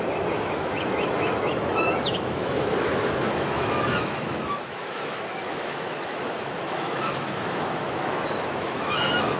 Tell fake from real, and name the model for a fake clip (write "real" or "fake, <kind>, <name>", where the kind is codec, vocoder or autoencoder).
fake, autoencoder, DAC-VAE